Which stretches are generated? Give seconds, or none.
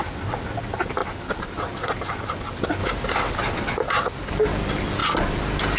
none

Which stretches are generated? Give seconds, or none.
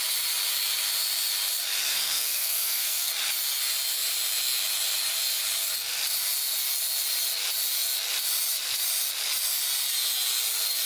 1.9-3.1 (codec, SNAC)